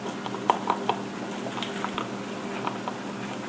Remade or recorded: recorded